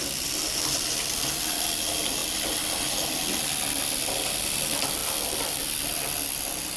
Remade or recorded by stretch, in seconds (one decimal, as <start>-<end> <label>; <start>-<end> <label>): 0.0-6.8 recorded